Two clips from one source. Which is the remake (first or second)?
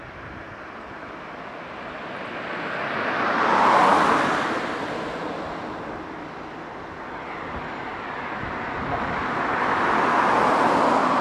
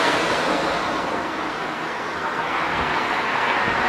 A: second